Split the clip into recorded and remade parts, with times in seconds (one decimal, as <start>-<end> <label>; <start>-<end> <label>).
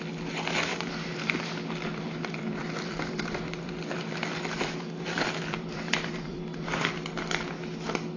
0.0-0.7 recorded; 0.7-1.3 remade; 1.3-1.9 recorded; 1.9-6.4 remade; 6.4-8.2 recorded